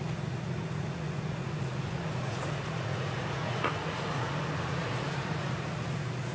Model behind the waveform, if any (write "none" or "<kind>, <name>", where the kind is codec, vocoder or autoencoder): vocoder, Vocos